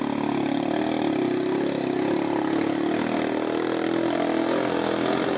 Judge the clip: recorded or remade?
recorded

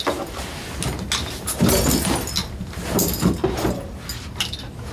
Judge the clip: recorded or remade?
recorded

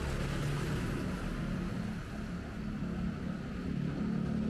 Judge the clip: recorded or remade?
recorded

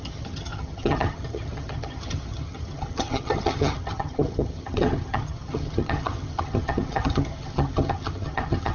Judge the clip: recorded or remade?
remade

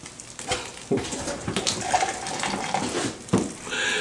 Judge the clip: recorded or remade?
recorded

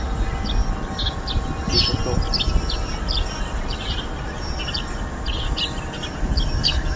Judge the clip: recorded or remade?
recorded